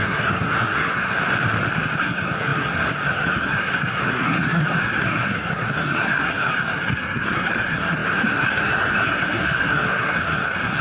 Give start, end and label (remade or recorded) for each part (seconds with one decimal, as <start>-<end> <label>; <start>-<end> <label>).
0.0-1.2 remade; 1.2-2.0 recorded; 2.0-10.8 remade